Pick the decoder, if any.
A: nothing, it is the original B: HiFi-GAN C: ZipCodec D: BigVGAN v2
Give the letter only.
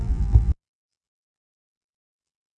D